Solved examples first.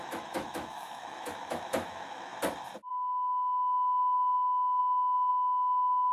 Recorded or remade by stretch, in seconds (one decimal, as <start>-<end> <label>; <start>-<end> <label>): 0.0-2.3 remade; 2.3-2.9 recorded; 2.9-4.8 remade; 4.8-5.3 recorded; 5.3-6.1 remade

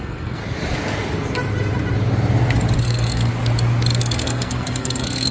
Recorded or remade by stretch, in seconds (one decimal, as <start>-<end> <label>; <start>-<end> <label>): 0.0-0.4 remade; 0.4-2.8 recorded; 2.8-3.3 remade; 3.3-4.0 recorded; 4.0-5.3 remade

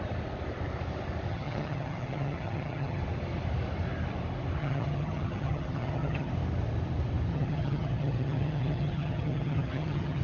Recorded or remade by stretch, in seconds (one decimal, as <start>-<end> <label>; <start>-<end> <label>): 0.0-1.3 recorded; 1.3-3.0 remade; 3.0-4.6 recorded; 4.6-6.3 remade; 6.3-7.3 recorded; 7.3-10.2 remade